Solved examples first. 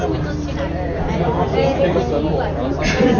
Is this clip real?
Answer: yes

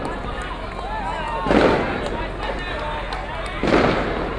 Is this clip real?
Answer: yes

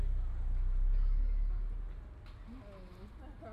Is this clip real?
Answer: yes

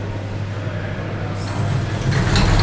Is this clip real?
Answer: yes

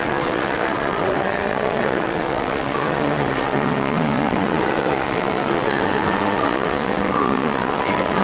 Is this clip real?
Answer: no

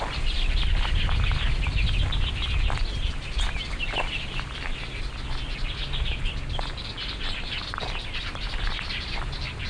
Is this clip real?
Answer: yes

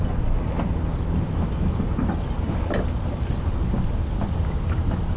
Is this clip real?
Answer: yes